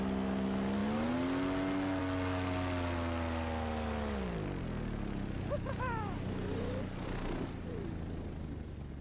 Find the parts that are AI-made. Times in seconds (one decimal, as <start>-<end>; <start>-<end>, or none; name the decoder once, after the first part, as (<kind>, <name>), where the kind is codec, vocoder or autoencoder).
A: none